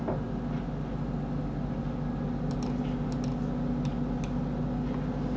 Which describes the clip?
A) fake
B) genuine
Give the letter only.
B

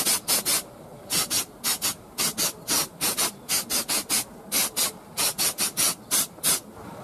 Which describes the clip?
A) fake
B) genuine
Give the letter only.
B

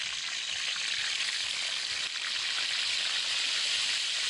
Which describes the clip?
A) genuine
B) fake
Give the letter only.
A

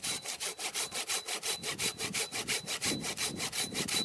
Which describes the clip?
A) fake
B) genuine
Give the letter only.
A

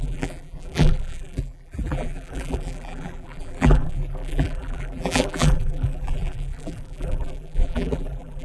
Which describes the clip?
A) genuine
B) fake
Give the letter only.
B